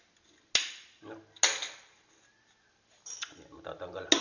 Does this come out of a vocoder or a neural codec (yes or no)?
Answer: no